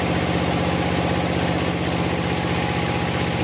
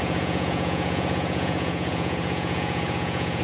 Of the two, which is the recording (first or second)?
first